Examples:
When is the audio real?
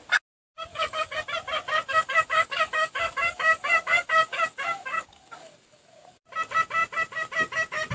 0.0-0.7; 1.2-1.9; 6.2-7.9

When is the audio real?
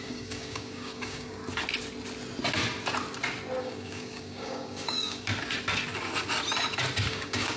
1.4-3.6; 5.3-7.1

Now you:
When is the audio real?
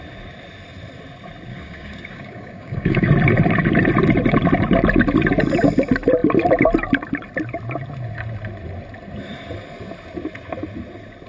0.0-1.5; 3.1-11.3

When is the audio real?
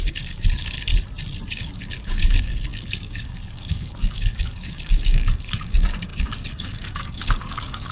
0.9-1.5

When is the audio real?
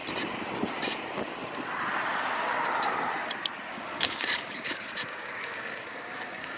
0.0-3.7